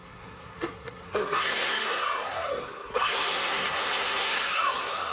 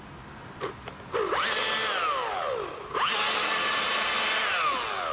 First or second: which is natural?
second